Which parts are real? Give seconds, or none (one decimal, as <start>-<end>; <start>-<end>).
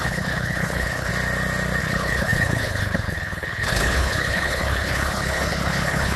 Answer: 1.1-1.8